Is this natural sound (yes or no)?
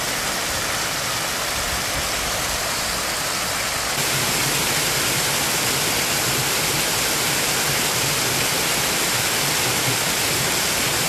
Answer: yes